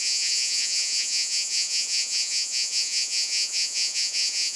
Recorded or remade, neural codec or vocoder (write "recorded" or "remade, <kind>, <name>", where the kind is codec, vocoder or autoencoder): remade, vocoder, Vocos